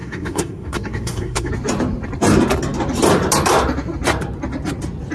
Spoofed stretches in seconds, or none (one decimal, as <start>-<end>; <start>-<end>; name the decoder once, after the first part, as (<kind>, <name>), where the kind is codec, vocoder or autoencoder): 0.0-1.5 (codec, SNAC)